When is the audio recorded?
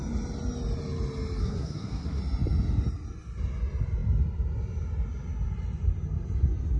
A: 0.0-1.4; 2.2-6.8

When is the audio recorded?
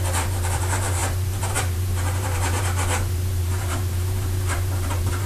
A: none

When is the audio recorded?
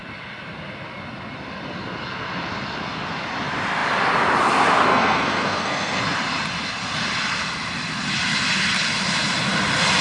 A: 0.0-4.9; 6.0-10.0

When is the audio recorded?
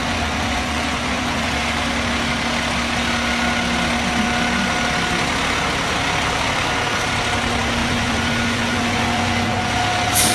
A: 1.8-7.8; 9.8-10.3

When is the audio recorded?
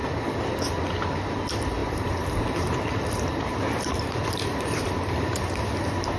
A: 0.0-1.8; 5.5-6.2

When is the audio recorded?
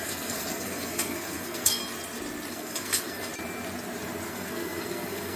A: 1.8-2.5; 3.3-4.3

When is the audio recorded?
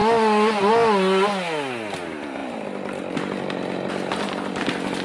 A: 0.7-5.0